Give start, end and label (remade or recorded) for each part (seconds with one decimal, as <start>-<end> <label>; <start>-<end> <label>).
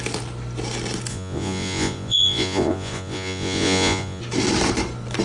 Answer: 0.0-1.1 recorded; 1.1-4.2 remade; 4.2-5.2 recorded